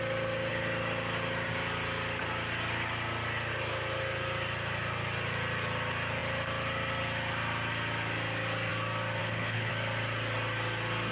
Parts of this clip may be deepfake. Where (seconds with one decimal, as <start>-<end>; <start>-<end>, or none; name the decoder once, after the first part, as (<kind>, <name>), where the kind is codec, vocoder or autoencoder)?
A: 9.2-9.7 (codec, HILCodec)